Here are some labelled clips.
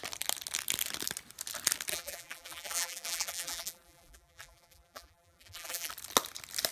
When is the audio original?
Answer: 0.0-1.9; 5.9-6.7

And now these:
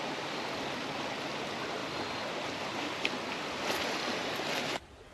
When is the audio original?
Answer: 0.0-5.1

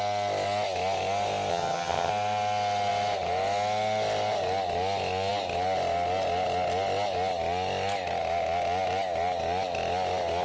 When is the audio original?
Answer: 0.0-1.5; 2.1-10.4

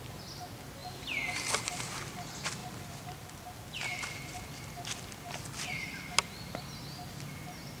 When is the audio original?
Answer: 0.8-2.0

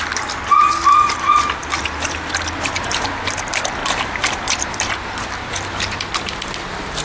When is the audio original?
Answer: 0.0-3.8; 4.3-5.4; 6.1-7.0

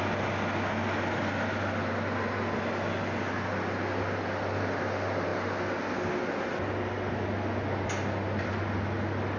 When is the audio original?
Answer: 0.0-9.4